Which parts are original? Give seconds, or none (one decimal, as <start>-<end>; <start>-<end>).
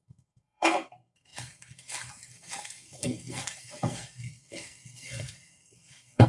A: none